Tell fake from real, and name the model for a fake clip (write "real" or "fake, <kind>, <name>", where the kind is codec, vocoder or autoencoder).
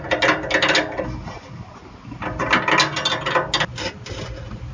real